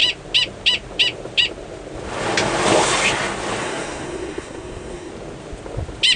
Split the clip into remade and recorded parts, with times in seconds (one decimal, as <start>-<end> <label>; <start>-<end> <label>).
0.0-3.6 recorded; 3.6-5.1 remade; 5.1-6.2 recorded